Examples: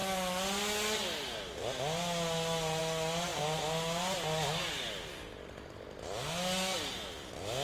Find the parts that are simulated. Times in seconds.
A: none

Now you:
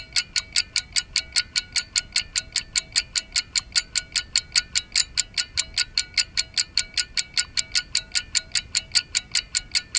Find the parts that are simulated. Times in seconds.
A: none

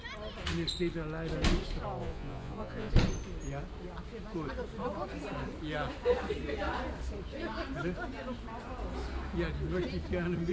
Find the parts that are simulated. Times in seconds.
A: 2.0-2.9 (vocoder, Vocos)

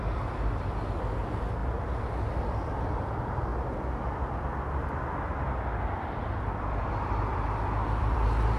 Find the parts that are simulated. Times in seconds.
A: 0.0-3.5 (vocoder, BigVGAN v2); 6.0-8.6

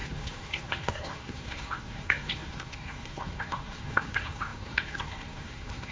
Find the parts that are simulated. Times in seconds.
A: 0.0-5.9 (codec, SNAC)

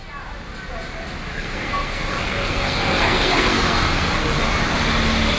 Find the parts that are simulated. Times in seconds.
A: 1.3-4.5 (codec, SNAC)

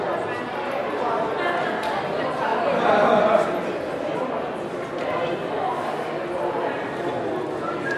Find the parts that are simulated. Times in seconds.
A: none

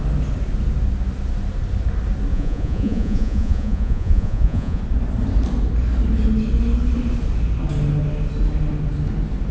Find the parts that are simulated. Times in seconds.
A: 2.3-4.8 (vocoder, Vocos)